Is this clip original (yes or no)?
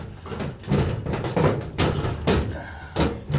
yes